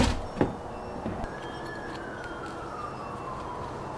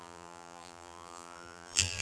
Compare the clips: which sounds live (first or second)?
first